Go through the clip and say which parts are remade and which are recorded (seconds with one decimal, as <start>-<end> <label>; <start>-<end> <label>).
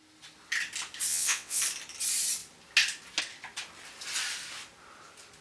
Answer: 0.0-1.1 recorded; 1.1-1.6 remade; 1.6-5.4 recorded